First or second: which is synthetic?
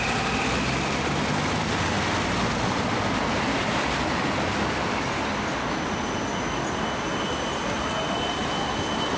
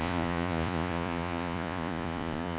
second